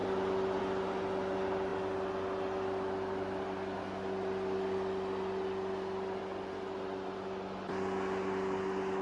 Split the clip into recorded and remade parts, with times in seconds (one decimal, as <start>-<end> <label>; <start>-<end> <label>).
0.0-9.0 recorded